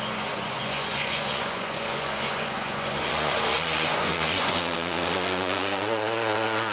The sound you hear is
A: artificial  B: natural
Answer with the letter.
A